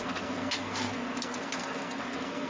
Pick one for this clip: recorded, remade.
remade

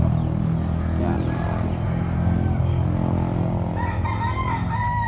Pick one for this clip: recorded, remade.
recorded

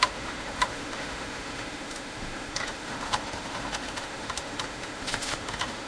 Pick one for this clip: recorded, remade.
remade